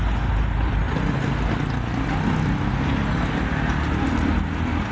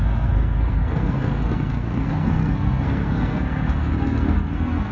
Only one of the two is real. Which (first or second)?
first